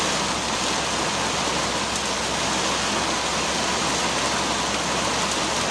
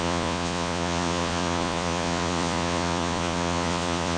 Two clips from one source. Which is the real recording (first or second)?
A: first